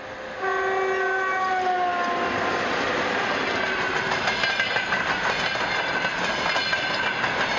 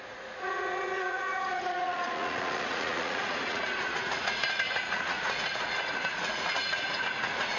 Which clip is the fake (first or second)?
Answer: second